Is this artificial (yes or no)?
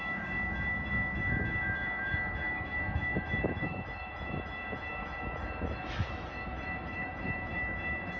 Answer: yes